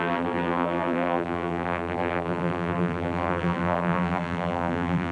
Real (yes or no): no